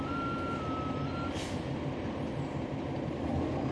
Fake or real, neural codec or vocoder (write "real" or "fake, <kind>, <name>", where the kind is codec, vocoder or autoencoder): fake, vocoder, BigVGAN v2